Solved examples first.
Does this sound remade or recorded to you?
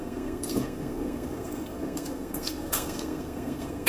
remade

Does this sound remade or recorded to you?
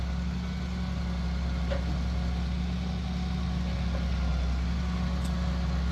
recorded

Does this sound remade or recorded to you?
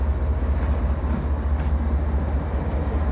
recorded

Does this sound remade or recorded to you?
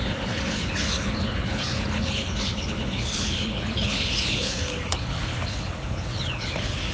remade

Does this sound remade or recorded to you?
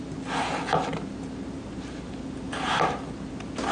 recorded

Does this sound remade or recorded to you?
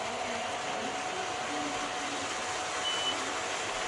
recorded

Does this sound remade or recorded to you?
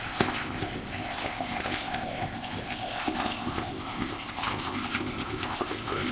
remade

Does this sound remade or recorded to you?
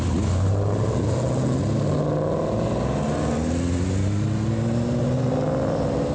recorded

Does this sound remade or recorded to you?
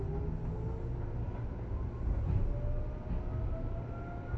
recorded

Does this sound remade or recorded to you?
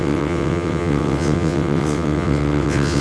remade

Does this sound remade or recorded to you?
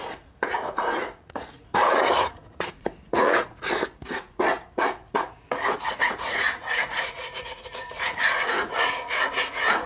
remade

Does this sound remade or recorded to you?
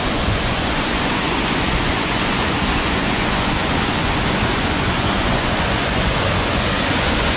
remade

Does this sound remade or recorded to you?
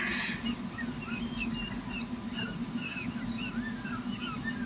recorded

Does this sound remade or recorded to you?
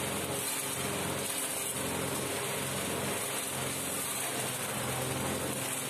recorded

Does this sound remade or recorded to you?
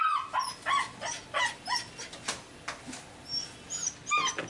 recorded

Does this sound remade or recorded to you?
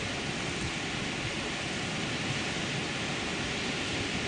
recorded